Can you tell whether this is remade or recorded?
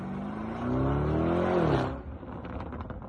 recorded